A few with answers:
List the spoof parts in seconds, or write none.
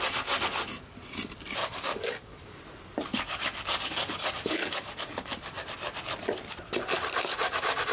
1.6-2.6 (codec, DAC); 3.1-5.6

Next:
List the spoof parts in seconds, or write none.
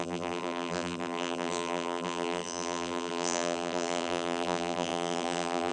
0.0-5.7 (vocoder, BigVGAN v2)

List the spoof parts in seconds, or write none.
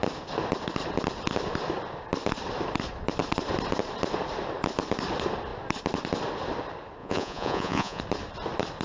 7.0-8.0 (vocoder, Vocos)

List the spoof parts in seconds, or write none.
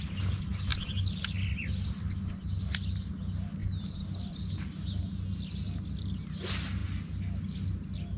none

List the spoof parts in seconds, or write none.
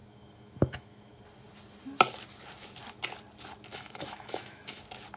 0.0-1.2 (autoencoder, DAC-VAE); 3.7-4.8